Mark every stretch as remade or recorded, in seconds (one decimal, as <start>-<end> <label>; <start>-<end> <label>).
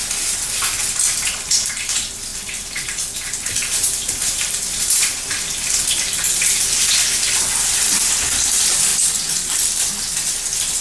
0.0-0.8 recorded; 0.8-8.9 remade; 8.9-10.0 recorded; 10.0-10.8 remade